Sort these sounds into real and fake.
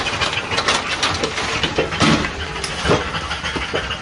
real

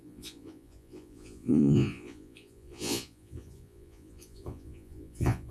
fake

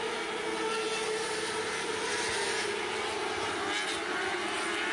real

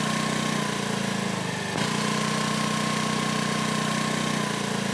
real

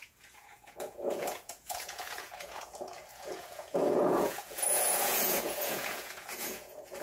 fake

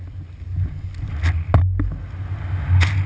real